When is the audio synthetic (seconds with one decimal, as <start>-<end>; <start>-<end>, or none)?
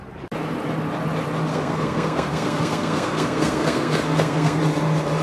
1.5-4.6